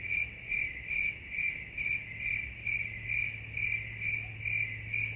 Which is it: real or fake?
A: real